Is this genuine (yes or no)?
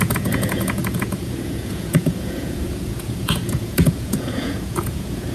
no